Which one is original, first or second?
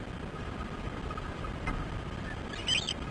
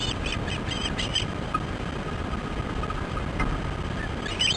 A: first